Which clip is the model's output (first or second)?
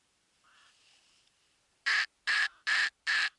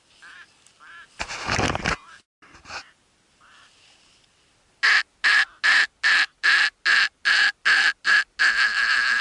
first